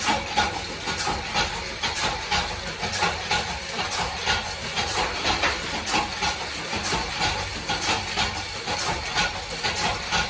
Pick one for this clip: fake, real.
real